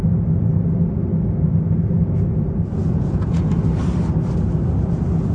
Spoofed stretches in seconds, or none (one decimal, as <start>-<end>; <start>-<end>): 2.8-3.4